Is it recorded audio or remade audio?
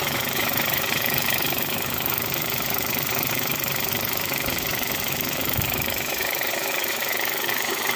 remade